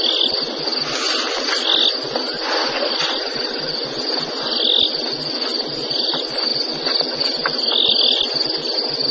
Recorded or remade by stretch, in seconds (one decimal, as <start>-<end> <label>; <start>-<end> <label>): 0.0-9.1 recorded